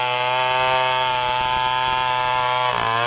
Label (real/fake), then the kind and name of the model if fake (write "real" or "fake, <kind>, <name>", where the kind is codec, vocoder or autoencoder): real